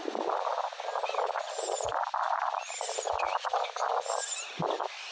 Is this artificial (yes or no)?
no